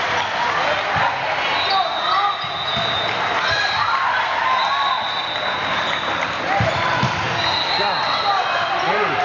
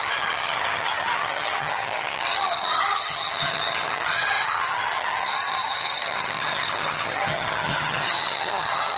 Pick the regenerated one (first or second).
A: second